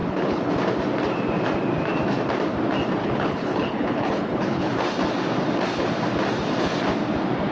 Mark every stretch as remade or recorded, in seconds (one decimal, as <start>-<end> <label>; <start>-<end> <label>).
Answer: 0.0-0.5 remade; 0.5-3.0 recorded; 3.0-4.7 remade; 4.7-7.5 recorded